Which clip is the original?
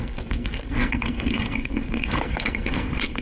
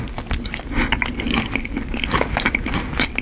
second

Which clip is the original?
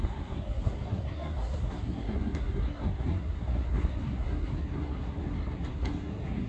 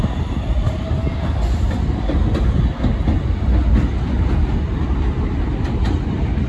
second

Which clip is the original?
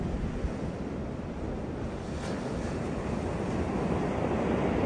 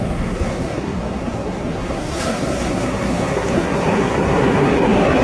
first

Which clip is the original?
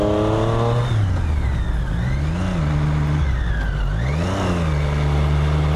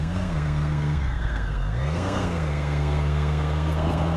first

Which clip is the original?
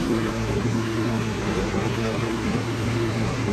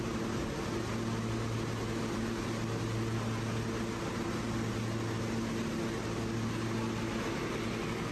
second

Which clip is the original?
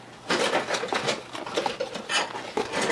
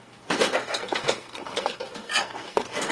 first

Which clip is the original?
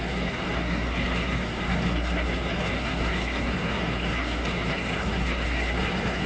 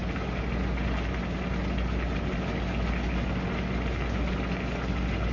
second